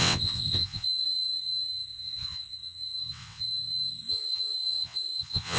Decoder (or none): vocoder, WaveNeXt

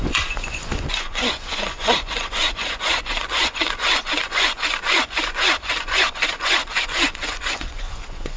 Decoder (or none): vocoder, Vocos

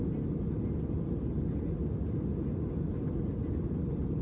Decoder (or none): none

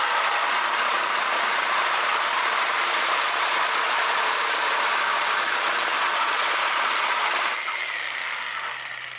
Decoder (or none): none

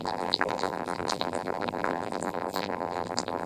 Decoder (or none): vocoder, BigVGAN v2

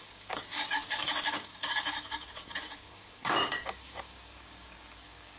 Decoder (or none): codec, DAC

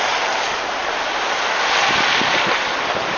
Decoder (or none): none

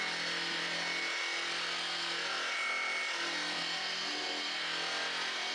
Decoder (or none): none